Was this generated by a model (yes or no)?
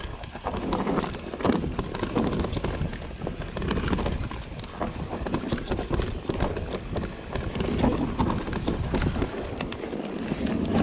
no